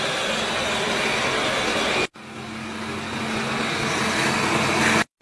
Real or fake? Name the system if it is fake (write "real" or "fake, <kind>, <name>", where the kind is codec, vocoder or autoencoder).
real